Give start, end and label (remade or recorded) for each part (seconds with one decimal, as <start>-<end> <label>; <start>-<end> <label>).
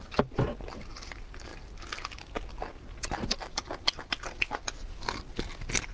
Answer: 0.0-5.9 recorded